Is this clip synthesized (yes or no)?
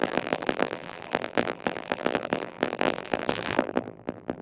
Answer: yes